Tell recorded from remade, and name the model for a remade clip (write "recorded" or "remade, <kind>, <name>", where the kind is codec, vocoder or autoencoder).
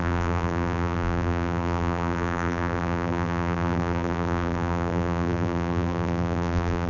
remade, vocoder, BigVGAN v2